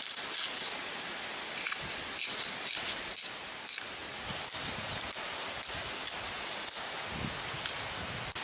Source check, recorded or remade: recorded